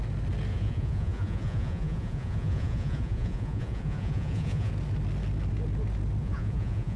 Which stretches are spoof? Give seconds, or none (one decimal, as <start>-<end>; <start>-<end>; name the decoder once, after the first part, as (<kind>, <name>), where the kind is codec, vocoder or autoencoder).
0.5-4.7 (vocoder, Vocos); 6.2-7.0